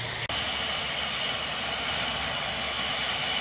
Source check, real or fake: real